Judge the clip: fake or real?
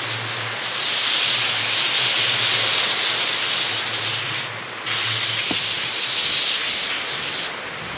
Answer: real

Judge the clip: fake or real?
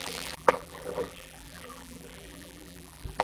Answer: fake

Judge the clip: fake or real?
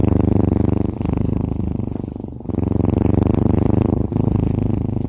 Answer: real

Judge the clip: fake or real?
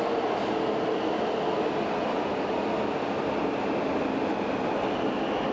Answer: real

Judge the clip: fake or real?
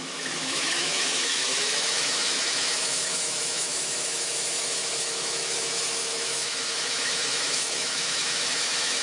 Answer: fake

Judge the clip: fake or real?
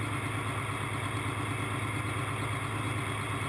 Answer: real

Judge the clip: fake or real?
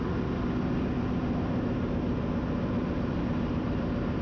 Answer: real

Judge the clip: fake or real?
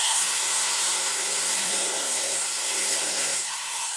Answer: fake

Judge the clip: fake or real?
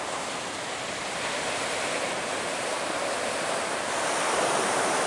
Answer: fake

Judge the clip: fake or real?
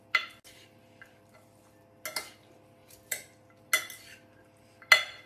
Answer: real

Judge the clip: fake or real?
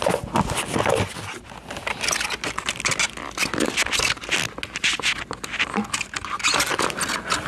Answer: real